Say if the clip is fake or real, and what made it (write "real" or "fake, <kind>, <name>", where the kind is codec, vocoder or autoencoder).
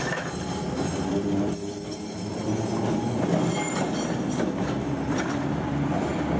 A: fake, vocoder, BigVGAN v2